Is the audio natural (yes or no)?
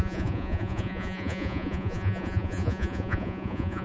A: no